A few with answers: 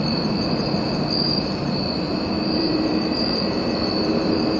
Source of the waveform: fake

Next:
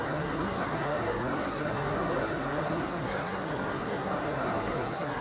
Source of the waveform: fake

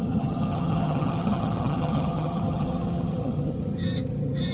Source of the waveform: fake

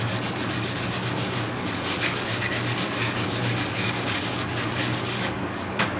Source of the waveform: fake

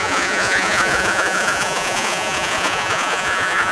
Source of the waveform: fake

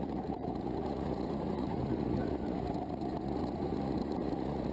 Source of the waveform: fake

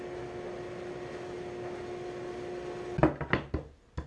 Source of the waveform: real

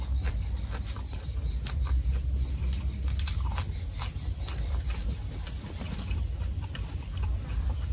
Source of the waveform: real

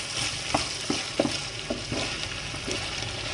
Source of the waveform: real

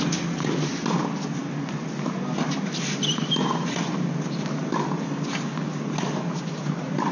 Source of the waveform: real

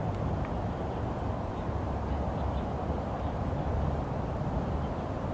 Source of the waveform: fake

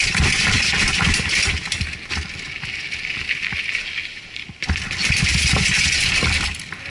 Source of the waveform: real